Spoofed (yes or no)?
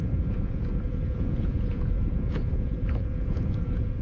yes